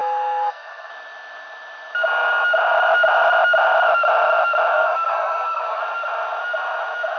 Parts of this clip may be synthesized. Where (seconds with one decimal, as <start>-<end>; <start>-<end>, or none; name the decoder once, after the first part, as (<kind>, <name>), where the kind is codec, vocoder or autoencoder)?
0.0-0.9 (codec, SNAC); 4.7-5.8